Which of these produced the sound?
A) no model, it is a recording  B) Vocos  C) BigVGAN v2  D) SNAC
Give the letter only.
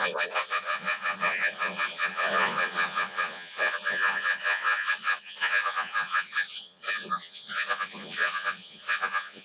B